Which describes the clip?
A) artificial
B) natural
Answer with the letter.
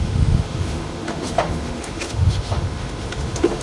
A